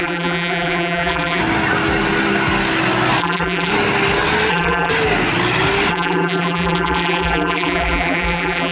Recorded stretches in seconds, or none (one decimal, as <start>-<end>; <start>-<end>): 1.4-3.2; 3.7-4.5; 4.9-5.9